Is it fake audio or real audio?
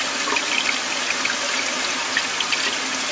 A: real